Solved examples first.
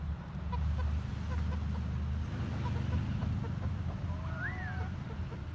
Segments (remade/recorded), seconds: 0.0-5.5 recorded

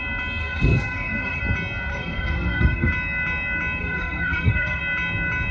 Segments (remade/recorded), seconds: 0.0-0.4 recorded; 0.4-1.4 remade; 1.4-1.9 recorded; 1.9-2.9 remade; 2.9-3.8 recorded; 3.8-4.8 remade; 4.8-5.5 recorded

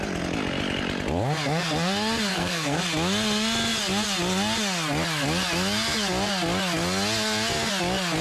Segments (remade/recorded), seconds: 0.0-2.3 recorded; 2.3-2.8 remade; 2.8-8.2 recorded

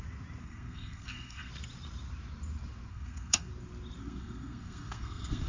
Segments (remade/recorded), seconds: 0.0-0.4 recorded; 0.4-1.5 remade; 1.5-2.9 recorded; 2.9-3.5 remade; 3.5-4.0 recorded; 4.0-5.5 remade

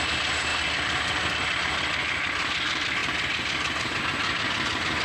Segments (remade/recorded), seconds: 0.0-5.0 recorded

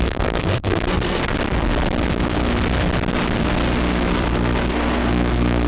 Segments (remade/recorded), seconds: 0.0-1.3 remade; 1.3-4.1 recorded; 4.1-5.7 remade

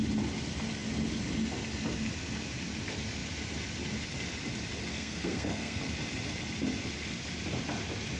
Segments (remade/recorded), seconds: 0.0-4.9 recorded; 4.9-5.8 remade; 5.8-8.2 recorded